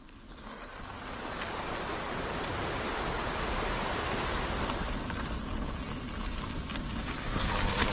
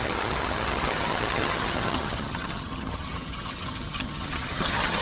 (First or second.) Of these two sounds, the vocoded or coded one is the second